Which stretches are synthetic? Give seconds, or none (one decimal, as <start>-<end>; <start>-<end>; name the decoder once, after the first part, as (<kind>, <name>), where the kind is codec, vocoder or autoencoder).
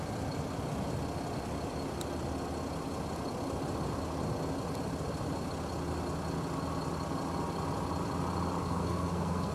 8.6-9.5 (codec, SNAC)